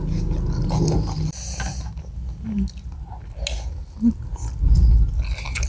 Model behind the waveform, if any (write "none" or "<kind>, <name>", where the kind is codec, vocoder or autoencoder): none